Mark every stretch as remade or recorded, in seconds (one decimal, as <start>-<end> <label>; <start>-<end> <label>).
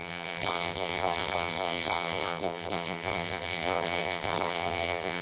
0.0-5.2 remade